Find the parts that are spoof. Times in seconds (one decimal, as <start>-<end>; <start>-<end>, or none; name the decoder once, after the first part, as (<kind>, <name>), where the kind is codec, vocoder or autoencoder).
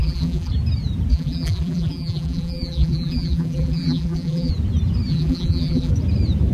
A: 0.0-0.5 (vocoder, BigVGAN v2); 1.1-4.5; 5.1-5.9